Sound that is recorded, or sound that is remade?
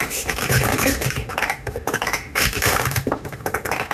remade